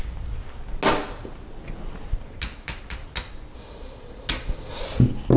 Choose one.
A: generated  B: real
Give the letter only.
B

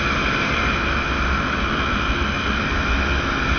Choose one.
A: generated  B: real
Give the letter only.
B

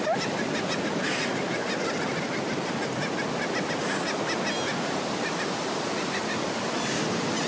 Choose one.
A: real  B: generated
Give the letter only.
A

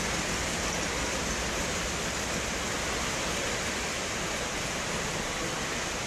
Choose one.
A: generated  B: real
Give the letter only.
A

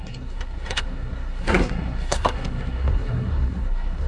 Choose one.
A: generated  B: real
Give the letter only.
A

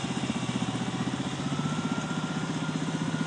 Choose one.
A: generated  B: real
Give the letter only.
B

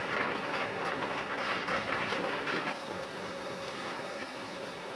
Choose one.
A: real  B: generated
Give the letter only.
B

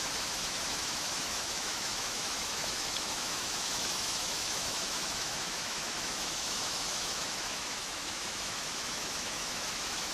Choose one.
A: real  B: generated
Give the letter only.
B